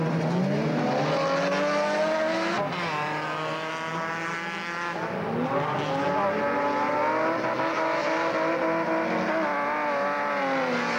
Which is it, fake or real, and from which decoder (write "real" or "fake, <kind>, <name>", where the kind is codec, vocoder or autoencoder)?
real